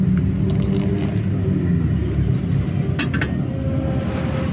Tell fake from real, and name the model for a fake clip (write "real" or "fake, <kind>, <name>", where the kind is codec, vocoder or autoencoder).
real